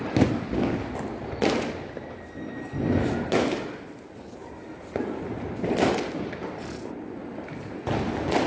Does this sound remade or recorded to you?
recorded